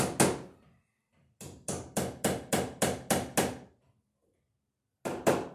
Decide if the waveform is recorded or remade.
recorded